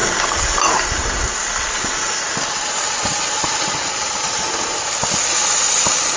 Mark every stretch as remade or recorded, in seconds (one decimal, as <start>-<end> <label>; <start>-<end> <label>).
0.0-6.2 recorded